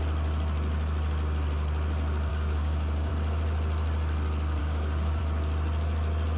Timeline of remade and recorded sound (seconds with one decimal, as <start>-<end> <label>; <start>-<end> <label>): 0.0-2.3 recorded; 2.3-3.1 remade; 3.1-4.6 recorded; 4.6-5.2 remade; 5.2-6.4 recorded